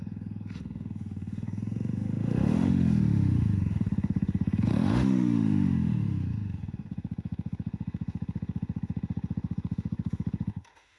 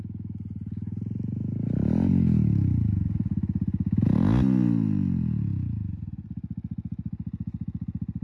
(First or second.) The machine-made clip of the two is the first